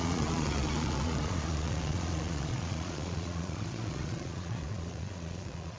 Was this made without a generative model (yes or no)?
no